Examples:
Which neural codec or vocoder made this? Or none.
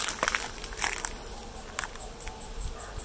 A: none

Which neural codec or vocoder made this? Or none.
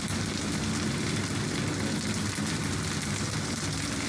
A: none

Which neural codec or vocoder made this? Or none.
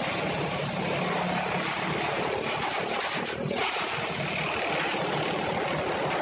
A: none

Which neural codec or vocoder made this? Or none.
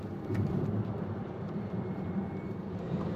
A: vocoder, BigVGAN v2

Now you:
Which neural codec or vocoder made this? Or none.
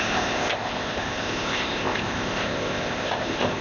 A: codec, ZipCodec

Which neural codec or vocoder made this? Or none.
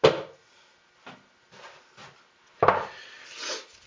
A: none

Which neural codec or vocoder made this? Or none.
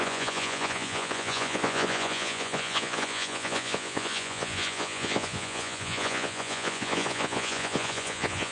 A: vocoder, Vocos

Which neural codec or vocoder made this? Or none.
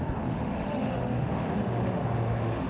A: autoencoder, DAC-VAE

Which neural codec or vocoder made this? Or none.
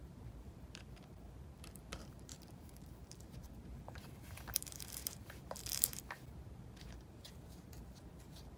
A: vocoder, BigVGAN v2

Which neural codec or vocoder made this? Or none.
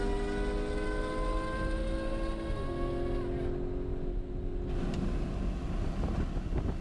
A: none